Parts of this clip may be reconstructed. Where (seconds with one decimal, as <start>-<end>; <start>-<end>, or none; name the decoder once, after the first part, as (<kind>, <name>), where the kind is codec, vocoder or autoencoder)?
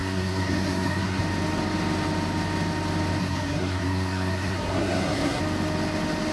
0.0-1.2 (codec, SNAC); 3.2-5.4